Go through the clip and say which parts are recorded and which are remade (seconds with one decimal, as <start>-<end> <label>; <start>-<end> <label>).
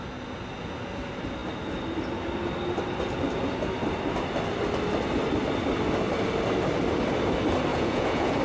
0.0-7.7 recorded; 7.7-8.4 remade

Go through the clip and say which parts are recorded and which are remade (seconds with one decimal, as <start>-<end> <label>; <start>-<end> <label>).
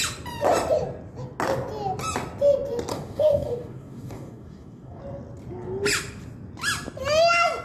0.0-2.9 recorded; 2.9-5.0 remade; 5.0-7.6 recorded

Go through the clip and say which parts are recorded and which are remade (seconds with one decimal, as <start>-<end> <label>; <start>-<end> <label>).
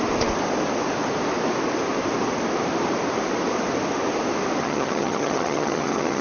0.0-4.6 recorded; 4.6-6.2 remade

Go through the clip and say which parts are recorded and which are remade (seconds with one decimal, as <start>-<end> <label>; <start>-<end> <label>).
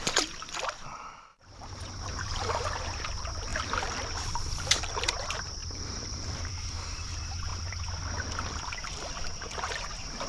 0.0-1.3 recorded; 1.3-2.4 remade; 2.4-3.5 recorded; 3.5-5.1 remade; 5.1-5.6 recorded; 5.6-6.7 remade; 6.7-10.3 recorded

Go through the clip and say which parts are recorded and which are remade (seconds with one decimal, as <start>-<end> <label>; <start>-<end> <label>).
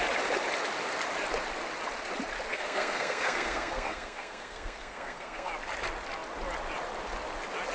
0.0-2.5 recorded; 2.5-5.5 remade; 5.5-7.7 recorded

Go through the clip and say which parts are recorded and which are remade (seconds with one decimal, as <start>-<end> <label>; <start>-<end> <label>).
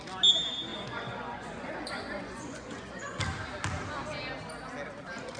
0.0-0.7 recorded; 0.7-3.2 remade; 3.2-5.4 recorded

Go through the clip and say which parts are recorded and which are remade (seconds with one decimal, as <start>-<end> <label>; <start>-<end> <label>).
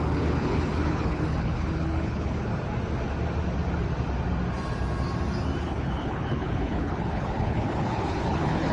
0.0-2.5 remade; 2.5-5.6 recorded; 5.6-8.7 remade